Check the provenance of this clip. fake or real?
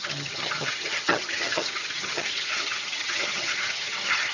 fake